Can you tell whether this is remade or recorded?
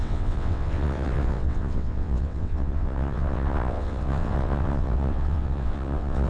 remade